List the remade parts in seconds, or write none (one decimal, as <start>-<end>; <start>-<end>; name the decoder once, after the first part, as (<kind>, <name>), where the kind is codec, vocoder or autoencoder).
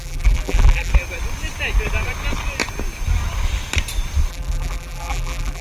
0.0-0.9 (vocoder, BigVGAN v2); 4.3-5.6